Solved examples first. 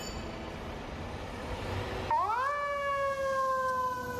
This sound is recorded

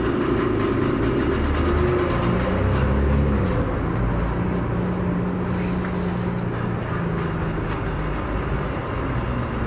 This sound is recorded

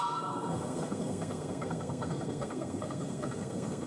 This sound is remade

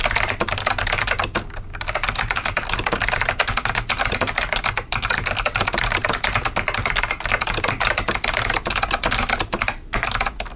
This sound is recorded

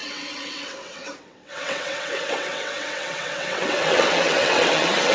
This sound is remade